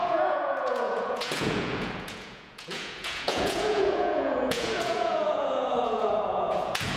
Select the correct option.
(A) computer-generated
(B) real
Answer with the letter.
A